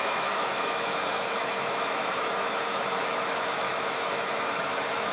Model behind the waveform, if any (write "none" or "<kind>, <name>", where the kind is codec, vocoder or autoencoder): autoencoder, DAC-VAE